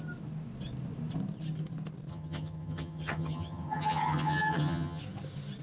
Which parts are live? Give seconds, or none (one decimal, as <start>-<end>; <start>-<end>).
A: 0.0-2.1; 5.0-5.6